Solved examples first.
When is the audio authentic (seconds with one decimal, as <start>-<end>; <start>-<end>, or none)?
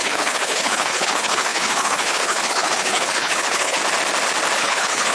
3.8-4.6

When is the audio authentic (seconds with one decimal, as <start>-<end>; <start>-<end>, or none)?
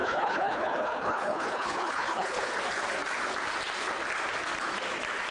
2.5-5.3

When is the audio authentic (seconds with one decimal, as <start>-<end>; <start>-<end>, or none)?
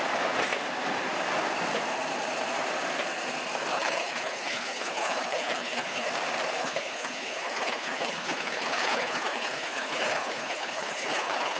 0.0-3.7; 6.1-6.6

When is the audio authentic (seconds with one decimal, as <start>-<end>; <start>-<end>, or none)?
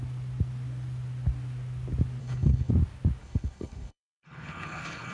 0.0-2.2; 2.7-3.2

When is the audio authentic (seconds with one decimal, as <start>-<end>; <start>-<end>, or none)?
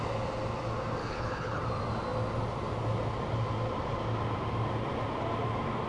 0.0-1.0; 1.6-5.9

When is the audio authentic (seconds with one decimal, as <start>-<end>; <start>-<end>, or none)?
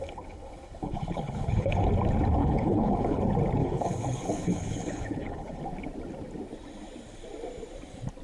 1.9-2.4; 3.2-3.6; 5.6-8.2